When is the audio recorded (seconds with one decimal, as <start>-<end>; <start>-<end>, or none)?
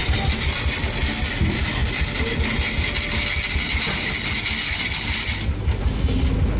0.0-6.6